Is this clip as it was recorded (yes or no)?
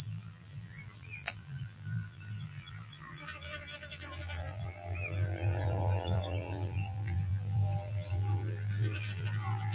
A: no